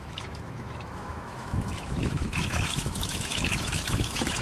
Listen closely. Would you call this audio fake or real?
fake